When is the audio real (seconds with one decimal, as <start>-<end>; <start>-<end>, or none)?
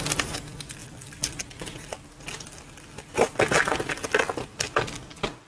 0.0-0.8; 4.1-5.5